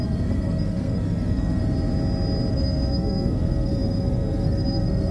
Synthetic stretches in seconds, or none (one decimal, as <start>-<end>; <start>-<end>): 0.0-1.6; 2.5-5.1